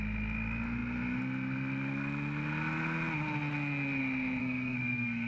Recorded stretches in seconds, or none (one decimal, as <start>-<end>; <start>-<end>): 0.0-4.4